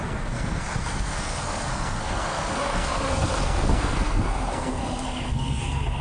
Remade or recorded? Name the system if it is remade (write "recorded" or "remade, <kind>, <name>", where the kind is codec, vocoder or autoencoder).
remade, codec, SNAC